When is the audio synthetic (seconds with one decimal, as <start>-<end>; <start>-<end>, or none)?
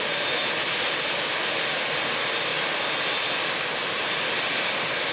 none